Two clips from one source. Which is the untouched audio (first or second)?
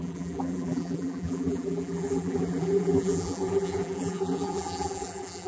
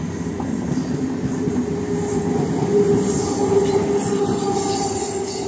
second